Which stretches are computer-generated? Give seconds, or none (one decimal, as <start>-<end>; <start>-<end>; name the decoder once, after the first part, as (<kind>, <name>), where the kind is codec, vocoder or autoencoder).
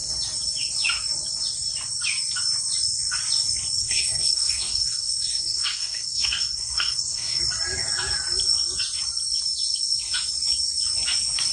3.8-7.4 (codec, SNAC)